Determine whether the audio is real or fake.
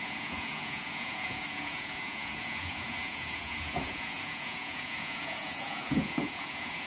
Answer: fake